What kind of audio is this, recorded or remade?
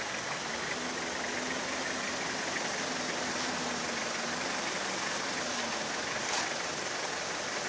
recorded